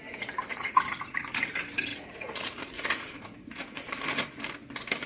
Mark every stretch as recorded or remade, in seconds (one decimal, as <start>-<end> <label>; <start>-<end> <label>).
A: 0.0-0.5 recorded; 0.5-1.2 remade; 1.2-1.9 recorded; 1.9-4.4 remade; 4.4-5.1 recorded